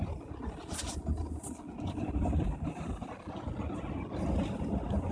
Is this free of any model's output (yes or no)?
yes